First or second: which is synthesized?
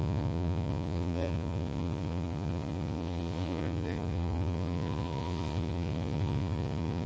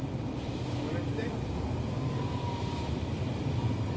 first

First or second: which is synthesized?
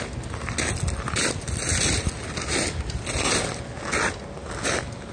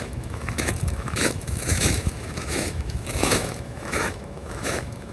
second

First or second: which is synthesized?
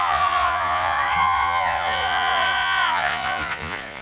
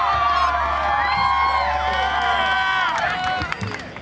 first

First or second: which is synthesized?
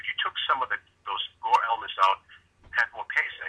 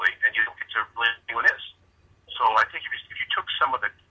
second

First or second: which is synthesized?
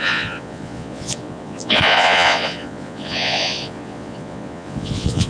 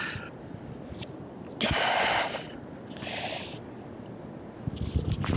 first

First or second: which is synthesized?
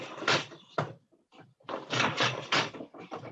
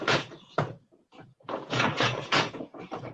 second